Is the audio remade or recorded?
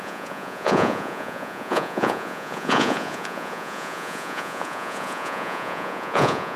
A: remade